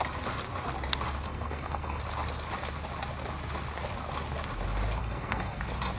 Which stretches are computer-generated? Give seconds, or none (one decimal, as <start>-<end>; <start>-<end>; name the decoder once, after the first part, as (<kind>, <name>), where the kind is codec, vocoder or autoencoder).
1.3-2.0 (codec, SNAC); 5.0-5.6